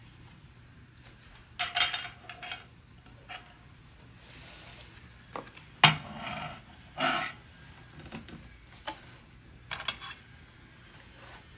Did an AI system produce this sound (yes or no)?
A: no